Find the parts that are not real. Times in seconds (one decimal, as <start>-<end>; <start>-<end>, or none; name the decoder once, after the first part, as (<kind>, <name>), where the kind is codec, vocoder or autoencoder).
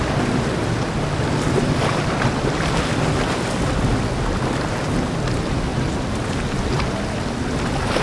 none